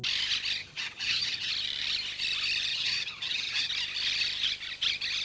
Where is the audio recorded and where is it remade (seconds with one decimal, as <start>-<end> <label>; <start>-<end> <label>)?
0.0-0.6 recorded; 0.6-1.5 remade; 1.5-2.7 recorded; 2.7-3.7 remade; 3.7-5.2 recorded